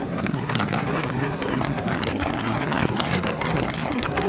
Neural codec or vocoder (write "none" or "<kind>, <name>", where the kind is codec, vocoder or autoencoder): codec, SNAC